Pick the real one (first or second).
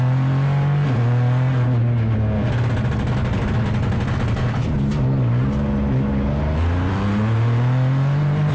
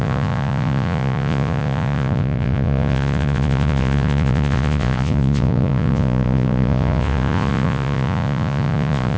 first